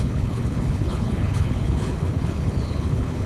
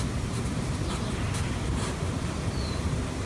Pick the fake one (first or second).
first